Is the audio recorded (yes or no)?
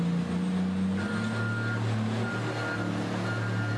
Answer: yes